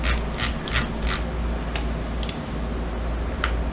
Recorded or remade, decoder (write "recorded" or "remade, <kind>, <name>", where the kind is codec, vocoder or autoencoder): recorded